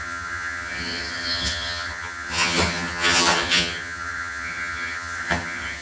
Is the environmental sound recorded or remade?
remade